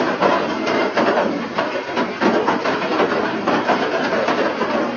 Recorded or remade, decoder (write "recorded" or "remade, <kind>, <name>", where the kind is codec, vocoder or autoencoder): remade, vocoder, BigVGAN v2